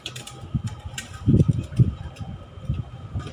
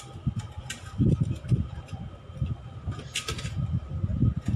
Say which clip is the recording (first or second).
second